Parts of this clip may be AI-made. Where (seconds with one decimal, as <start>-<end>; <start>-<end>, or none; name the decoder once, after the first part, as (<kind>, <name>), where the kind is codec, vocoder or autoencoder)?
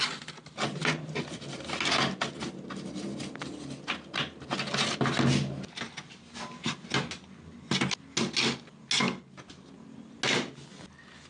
none